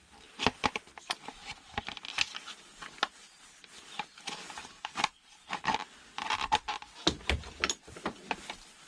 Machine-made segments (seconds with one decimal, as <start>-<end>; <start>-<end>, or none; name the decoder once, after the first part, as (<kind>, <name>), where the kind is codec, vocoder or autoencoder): none